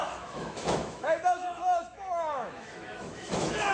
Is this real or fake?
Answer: fake